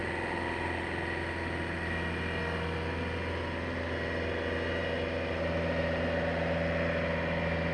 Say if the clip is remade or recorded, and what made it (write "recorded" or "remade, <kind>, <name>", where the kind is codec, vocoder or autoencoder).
recorded